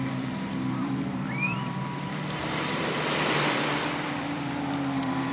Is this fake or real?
fake